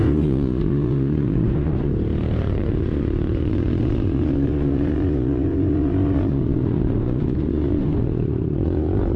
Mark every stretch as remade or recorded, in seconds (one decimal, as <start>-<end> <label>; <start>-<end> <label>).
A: 0.0-1.9 remade; 1.9-2.4 recorded; 2.4-9.2 remade